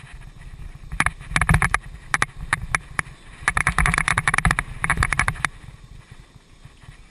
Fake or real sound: real